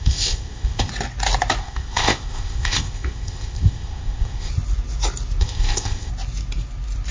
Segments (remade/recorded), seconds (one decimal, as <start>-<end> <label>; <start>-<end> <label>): 0.0-0.9 remade; 0.9-1.6 recorded; 1.6-4.5 remade; 4.5-5.4 recorded; 5.4-6.1 remade; 6.1-7.1 recorded